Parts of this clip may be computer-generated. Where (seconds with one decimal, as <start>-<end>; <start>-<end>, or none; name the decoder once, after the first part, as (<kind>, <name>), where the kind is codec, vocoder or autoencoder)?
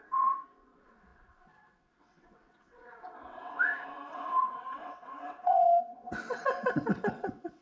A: 0.0-7.6 (vocoder, WaveNeXt)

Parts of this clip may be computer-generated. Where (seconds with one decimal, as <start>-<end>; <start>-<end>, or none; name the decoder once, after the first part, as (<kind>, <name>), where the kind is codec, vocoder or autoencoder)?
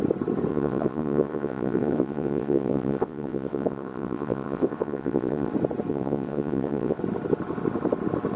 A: 0.5-5.5 (vocoder, WaveNeXt); 5.9-7.0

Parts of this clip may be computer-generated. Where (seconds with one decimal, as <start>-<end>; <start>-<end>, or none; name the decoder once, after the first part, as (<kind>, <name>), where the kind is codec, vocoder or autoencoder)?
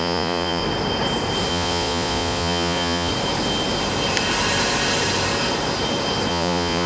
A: 0.0-0.6 (vocoder, Vocos); 1.5-3.1; 6.3-6.9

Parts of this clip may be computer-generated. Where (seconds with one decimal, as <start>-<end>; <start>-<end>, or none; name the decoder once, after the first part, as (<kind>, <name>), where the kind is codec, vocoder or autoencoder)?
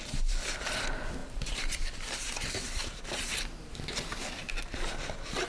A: 1.2-1.8 (vocoder, BigVGAN v2)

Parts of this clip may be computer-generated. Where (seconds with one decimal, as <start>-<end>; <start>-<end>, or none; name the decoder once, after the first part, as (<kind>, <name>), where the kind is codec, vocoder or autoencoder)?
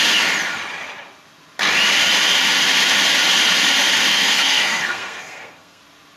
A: 4.1-5.8 (codec, SNAC)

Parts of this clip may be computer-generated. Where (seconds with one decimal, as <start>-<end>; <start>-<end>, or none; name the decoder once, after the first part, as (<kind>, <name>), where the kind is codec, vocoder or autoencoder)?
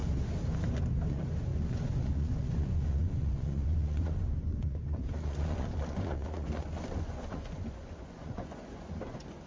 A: 1.1-9.5 (vocoder, Vocos)